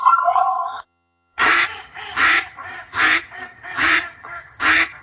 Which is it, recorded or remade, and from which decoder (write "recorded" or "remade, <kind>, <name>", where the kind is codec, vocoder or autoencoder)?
remade, vocoder, HiFi-GAN